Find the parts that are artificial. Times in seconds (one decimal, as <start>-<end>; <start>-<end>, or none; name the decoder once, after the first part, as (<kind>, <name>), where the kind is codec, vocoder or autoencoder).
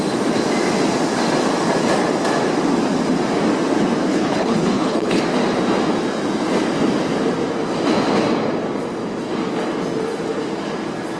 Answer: 4.1-5.2 (codec, HILCodec)